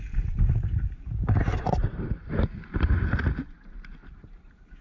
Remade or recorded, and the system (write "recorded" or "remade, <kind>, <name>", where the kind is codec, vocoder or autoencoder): remade, vocoder, BigVGAN v2